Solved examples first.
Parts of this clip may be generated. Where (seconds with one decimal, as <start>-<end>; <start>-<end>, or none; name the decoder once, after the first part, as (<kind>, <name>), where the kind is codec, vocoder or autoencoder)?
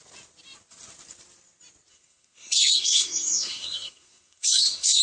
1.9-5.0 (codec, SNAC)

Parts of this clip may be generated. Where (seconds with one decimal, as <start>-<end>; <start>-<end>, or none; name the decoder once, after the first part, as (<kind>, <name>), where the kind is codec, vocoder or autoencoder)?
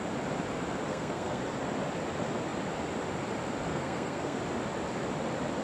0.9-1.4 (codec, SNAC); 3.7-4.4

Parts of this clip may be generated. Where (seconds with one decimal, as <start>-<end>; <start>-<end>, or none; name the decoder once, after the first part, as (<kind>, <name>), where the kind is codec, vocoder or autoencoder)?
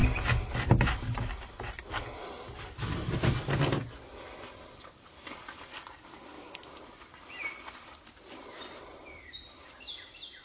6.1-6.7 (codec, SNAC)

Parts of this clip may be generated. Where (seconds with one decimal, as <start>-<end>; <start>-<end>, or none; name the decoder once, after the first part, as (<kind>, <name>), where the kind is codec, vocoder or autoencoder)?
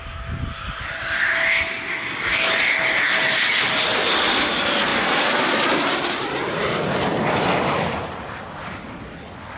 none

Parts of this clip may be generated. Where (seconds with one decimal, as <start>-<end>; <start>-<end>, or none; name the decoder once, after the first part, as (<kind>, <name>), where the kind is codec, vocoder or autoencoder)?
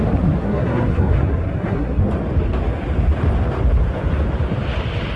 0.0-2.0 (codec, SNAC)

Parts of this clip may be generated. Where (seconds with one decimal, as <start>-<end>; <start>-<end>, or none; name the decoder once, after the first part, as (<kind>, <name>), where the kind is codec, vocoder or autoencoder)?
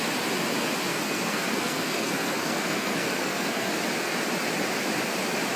0.9-3.7 (codec, SNAC)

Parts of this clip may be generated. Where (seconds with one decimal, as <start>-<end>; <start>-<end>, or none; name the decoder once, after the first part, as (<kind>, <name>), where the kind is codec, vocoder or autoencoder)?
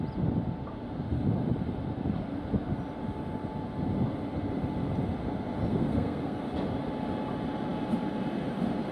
5.7-6.4 (codec, SNAC)